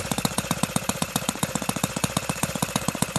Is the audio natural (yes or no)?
no